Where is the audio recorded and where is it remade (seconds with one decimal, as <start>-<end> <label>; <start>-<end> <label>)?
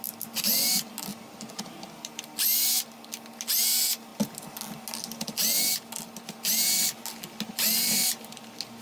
0.0-1.1 recorded; 1.1-1.7 remade; 1.7-8.8 recorded